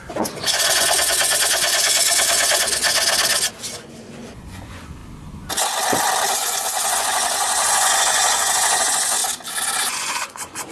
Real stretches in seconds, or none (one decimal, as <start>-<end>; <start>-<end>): 2.8-3.7; 5.0-6.3; 9.2-9.9